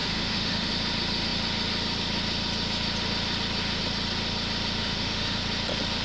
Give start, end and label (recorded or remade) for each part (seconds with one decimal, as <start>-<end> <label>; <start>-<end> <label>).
0.0-0.7 remade; 0.7-4.8 recorded; 4.8-5.4 remade; 5.4-6.0 recorded